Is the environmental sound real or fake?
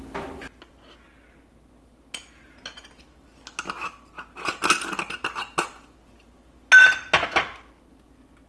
real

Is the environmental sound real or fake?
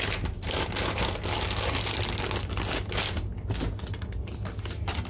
real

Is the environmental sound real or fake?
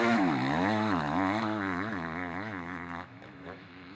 fake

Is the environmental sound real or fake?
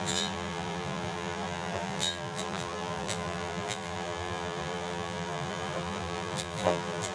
fake